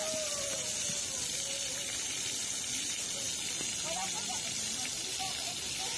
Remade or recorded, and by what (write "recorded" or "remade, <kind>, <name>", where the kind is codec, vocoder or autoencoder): recorded